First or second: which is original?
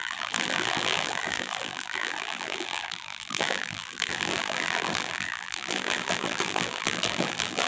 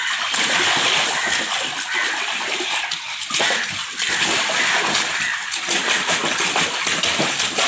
second